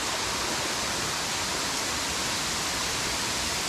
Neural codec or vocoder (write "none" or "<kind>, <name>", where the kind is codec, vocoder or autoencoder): none